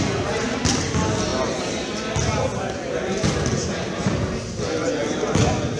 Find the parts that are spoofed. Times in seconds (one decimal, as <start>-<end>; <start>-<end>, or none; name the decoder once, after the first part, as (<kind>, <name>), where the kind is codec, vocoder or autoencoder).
none